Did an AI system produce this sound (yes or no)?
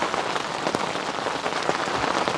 no